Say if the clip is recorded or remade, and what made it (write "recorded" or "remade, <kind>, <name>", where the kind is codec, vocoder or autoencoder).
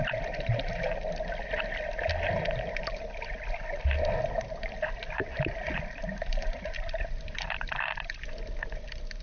recorded